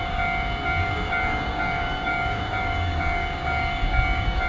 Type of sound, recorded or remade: remade